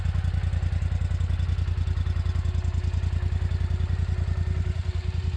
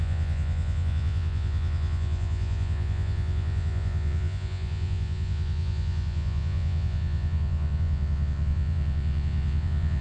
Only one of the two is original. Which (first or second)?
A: first